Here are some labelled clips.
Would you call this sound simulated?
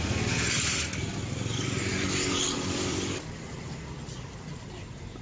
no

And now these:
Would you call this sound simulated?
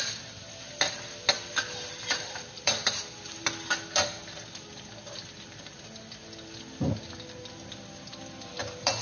no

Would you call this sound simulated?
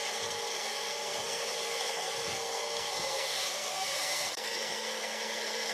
yes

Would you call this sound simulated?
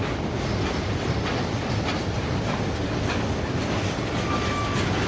no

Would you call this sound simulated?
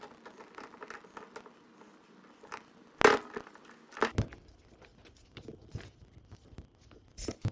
no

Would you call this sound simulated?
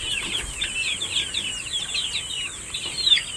no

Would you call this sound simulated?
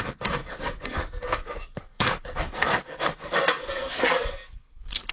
yes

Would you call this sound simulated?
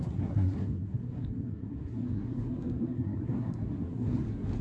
yes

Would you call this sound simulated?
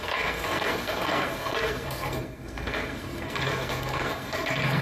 yes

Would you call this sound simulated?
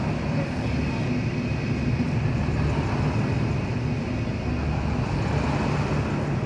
no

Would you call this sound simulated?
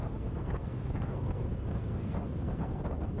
yes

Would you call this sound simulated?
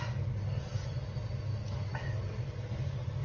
no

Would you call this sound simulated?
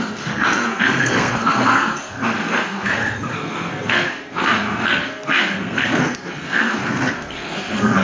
yes